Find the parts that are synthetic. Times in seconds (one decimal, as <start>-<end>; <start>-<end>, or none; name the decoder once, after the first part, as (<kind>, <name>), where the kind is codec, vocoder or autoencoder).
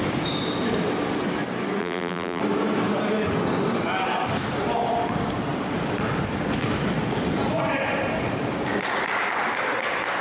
1.8-2.4 (vocoder, BigVGAN v2)